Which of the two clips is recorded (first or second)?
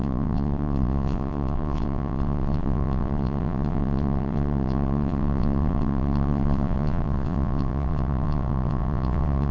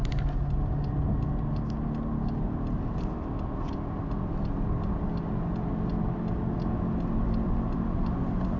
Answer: second